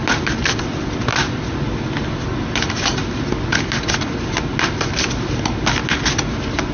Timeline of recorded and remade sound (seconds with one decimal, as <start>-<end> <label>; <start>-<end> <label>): 0.0-6.7 recorded